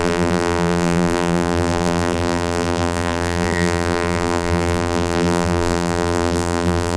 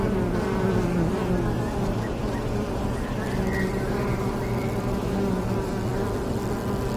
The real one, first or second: second